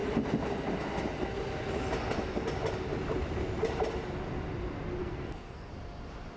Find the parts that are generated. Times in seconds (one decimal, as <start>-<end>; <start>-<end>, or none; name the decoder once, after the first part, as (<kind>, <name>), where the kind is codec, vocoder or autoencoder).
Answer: 5.0-5.7 (codec, SNAC)